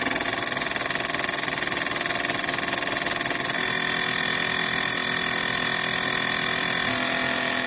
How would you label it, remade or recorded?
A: recorded